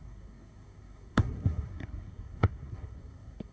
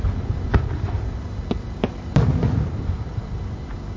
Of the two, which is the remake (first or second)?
first